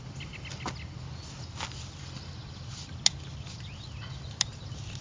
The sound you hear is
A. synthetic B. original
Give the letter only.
B